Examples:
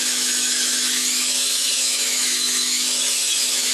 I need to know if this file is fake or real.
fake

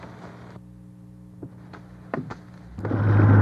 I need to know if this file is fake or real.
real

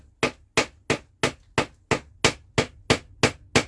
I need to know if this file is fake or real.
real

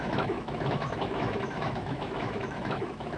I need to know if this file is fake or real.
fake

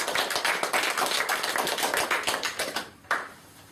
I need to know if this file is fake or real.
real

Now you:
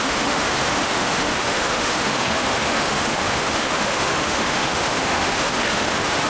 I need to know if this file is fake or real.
fake